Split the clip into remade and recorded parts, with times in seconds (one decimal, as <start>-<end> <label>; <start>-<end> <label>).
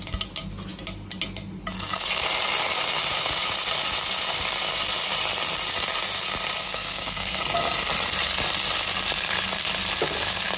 0.0-6.6 recorded; 6.6-7.4 remade; 7.4-10.6 recorded